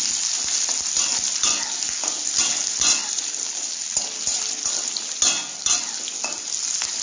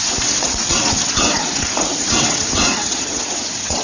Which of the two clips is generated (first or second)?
second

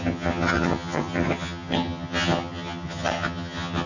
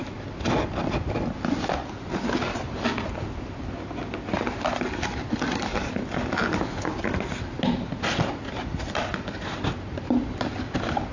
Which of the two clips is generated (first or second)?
first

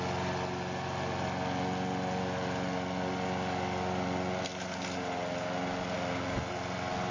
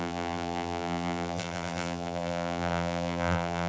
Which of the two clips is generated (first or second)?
second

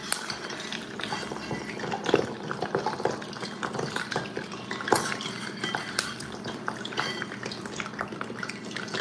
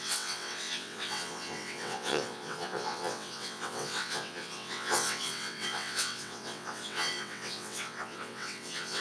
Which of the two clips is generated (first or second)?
second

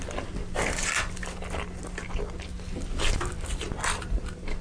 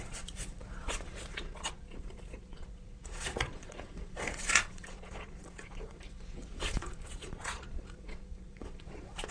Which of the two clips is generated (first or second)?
second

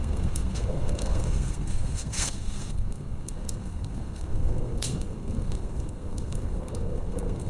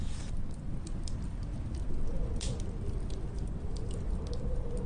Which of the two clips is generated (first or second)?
first